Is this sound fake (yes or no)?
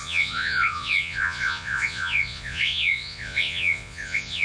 yes